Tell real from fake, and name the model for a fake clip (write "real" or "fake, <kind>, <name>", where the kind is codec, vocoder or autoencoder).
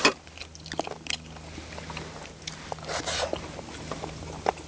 real